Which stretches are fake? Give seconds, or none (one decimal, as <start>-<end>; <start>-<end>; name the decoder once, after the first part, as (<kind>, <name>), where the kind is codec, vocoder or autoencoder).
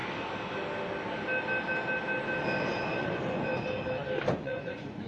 3.0-3.5 (vocoder, Vocos); 4.4-5.1